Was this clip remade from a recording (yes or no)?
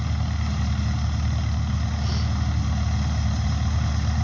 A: no